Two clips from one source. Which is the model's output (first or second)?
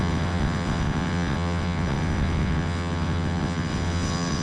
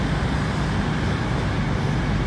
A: first